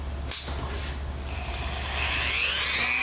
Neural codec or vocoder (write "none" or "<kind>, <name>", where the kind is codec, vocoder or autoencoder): none